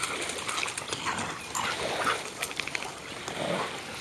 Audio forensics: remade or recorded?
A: recorded